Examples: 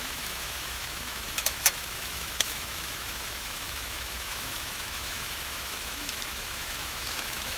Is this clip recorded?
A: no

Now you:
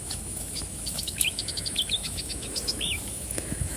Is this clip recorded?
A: no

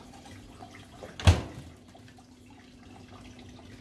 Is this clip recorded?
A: yes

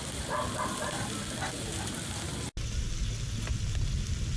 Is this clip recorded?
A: yes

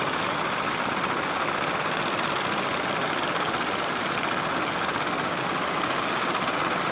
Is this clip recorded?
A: yes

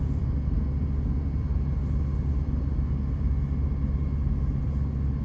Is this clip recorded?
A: yes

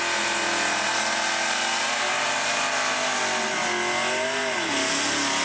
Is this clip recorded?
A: yes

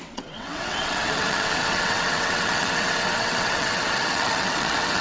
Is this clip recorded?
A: no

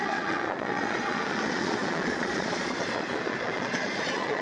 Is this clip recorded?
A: no